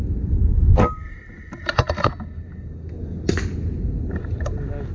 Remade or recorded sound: recorded